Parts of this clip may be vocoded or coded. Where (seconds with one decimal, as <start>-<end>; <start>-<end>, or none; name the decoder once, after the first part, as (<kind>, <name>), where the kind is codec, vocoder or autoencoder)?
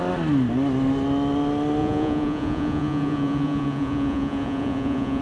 1.8-5.2 (vocoder, Vocos)